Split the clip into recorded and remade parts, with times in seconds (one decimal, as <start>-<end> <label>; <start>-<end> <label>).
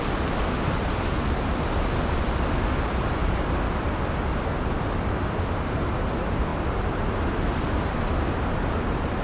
0.0-9.2 recorded